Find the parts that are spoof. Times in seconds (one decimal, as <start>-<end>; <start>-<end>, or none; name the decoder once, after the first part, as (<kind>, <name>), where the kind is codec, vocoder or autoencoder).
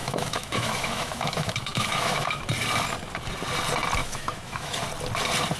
0.0-2.4 (autoencoder, DAC-VAE); 4.0-4.8